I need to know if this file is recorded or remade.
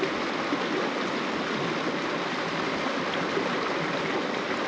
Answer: recorded